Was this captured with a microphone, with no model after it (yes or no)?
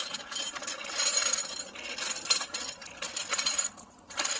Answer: yes